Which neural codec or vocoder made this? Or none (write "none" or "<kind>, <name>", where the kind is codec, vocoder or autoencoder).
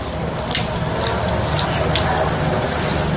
none